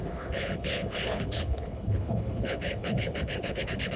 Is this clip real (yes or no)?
no